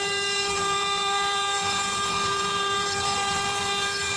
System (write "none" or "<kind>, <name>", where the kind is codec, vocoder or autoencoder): vocoder, BigVGAN v2